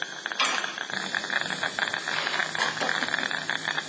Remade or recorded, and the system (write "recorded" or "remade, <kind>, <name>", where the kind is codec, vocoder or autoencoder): recorded